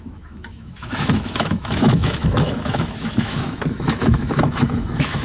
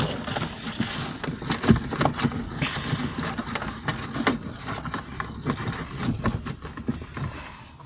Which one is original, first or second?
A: second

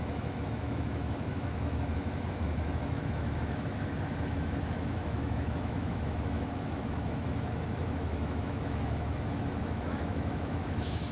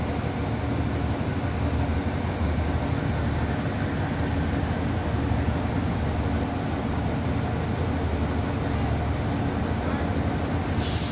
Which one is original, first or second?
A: second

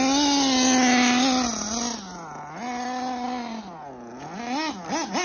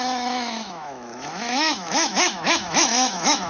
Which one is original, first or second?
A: first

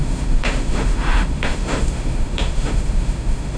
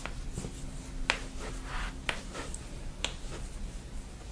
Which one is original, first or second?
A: second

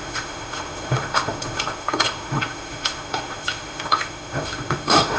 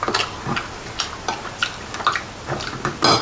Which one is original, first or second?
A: second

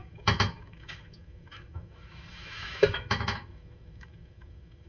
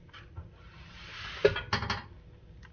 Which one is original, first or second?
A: second